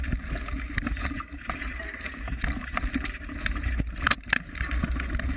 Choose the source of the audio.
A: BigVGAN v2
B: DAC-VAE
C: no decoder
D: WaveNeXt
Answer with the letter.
A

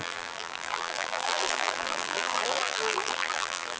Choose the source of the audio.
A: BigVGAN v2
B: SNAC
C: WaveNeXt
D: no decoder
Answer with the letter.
A